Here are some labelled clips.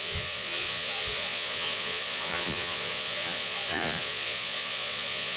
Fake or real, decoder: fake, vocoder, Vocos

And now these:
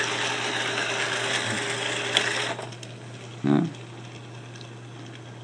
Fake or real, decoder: real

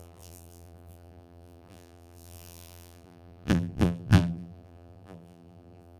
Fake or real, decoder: fake, vocoder, BigVGAN v2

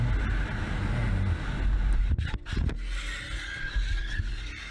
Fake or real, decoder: real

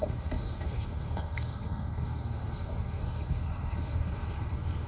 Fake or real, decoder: fake, codec, SNAC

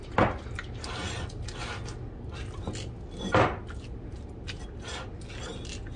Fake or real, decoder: real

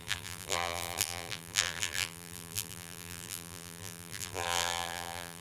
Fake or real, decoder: fake, vocoder, BigVGAN v2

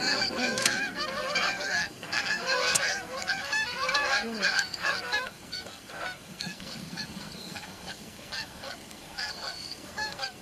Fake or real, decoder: fake, codec, SNAC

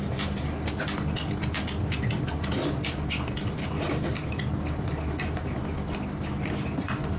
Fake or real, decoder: real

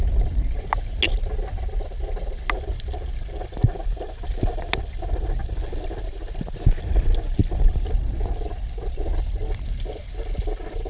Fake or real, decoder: real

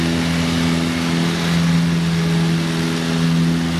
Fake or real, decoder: real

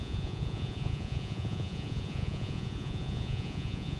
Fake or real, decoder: fake, vocoder, Vocos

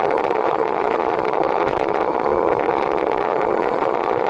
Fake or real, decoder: fake, vocoder, Vocos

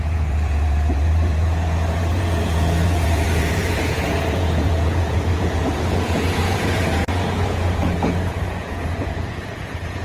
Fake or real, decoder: fake, vocoder, Vocos